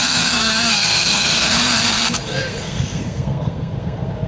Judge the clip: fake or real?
fake